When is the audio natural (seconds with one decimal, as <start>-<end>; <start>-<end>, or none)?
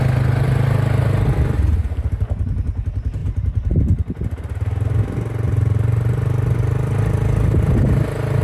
0.0-8.4